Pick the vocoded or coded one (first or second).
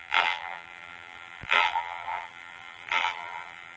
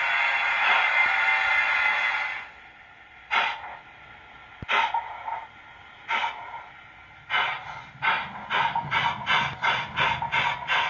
first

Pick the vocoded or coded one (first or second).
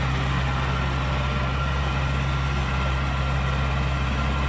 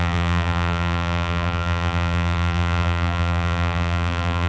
second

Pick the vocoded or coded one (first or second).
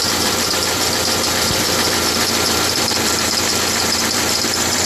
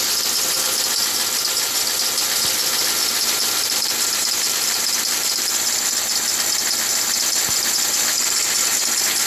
first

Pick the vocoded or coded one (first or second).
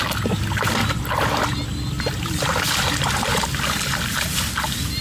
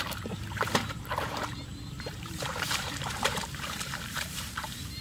second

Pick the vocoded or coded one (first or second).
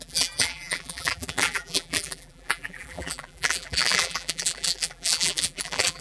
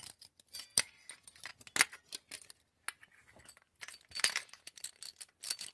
first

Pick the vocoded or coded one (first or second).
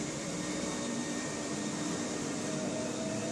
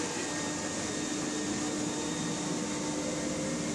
first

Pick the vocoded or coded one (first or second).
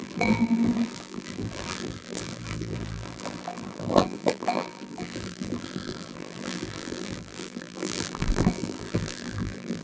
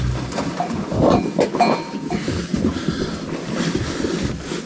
first